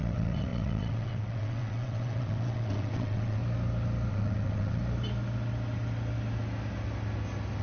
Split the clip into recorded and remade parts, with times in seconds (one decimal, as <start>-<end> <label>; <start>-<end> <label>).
0.0-3.4 remade; 3.4-4.1 recorded; 4.1-4.8 remade; 4.8-7.6 recorded